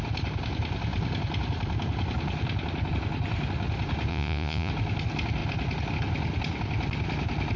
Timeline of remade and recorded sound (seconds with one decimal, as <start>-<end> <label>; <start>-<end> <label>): 0.0-4.1 recorded; 4.1-4.7 remade; 4.7-7.6 recorded